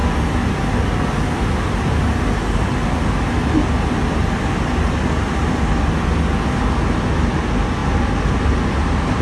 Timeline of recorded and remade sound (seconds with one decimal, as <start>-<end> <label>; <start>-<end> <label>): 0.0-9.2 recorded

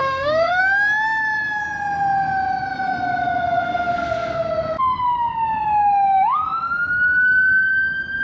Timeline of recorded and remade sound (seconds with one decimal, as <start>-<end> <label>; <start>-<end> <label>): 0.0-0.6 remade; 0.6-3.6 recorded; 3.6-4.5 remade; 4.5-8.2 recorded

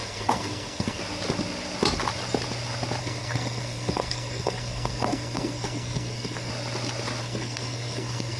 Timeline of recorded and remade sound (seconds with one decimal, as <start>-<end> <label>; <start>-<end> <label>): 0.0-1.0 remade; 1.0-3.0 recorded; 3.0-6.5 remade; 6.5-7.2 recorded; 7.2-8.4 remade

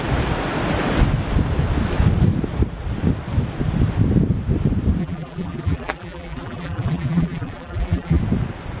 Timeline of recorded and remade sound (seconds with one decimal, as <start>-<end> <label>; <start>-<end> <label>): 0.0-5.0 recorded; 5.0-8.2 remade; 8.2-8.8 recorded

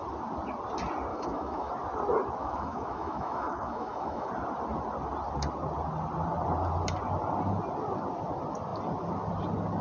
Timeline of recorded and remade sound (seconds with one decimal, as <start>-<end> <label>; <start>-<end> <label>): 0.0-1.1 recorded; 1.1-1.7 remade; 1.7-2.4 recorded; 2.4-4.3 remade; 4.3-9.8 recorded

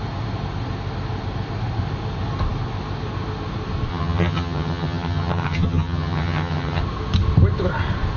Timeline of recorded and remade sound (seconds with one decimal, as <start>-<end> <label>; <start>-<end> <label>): 0.0-3.9 recorded; 3.9-6.8 remade; 6.8-8.2 recorded

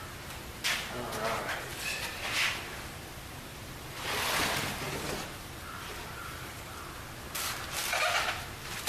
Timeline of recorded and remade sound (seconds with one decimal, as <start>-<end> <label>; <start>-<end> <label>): 0.0-1.7 recorded; 1.7-6.6 remade; 6.6-7.8 recorded; 7.8-8.4 remade; 8.4-8.9 recorded